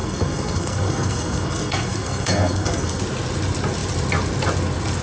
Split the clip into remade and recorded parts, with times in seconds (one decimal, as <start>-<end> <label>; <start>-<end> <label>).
0.0-3.0 remade; 3.0-5.0 recorded